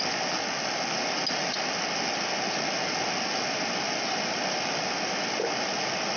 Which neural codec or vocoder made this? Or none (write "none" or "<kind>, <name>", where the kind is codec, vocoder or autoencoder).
none